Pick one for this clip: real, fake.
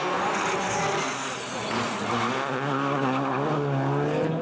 real